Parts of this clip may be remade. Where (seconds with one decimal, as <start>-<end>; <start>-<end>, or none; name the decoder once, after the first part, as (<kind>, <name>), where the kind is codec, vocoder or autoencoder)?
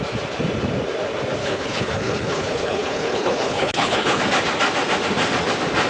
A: 1.4-4.2 (codec, HILCodec)